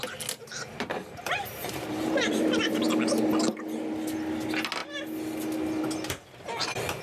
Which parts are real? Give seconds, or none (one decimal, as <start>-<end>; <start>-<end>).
0.0-0.4; 2.8-7.0